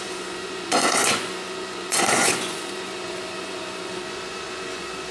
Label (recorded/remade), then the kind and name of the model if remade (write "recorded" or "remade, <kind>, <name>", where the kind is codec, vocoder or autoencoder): remade, vocoder, Vocos